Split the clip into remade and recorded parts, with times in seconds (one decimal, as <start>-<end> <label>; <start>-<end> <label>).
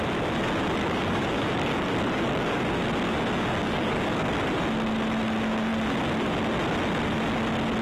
0.0-0.8 recorded; 0.8-2.6 remade; 2.6-3.6 recorded; 3.6-4.3 remade; 4.3-7.8 recorded